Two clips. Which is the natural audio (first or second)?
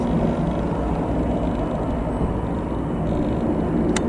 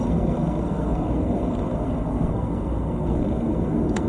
first